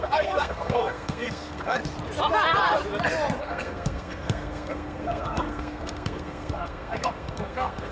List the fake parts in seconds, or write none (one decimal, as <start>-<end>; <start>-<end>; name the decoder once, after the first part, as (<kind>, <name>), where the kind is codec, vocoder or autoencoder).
0.0-1.8 (codec, SNAC); 3.4-7.9